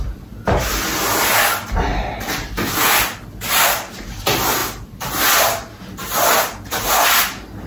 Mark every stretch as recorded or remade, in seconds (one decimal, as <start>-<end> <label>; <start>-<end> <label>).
0.0-1.9 recorded; 1.9-3.9 remade; 3.9-7.7 recorded